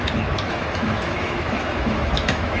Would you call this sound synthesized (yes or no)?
yes